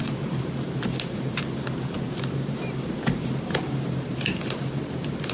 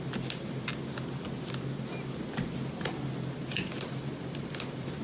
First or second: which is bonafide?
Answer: second